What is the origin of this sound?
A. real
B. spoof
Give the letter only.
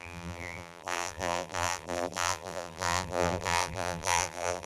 B